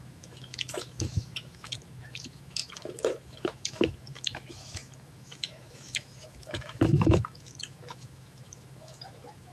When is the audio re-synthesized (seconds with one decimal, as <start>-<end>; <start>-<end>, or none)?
0.0-9.5